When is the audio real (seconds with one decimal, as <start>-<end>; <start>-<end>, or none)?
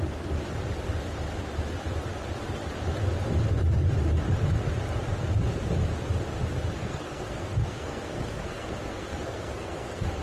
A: 0.0-6.8